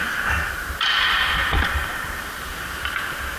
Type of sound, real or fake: real